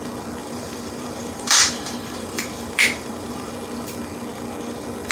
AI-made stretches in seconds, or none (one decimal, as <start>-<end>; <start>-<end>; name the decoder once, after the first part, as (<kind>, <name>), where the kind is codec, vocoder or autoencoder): 0.4-3.5 (vocoder, BigVGAN v2)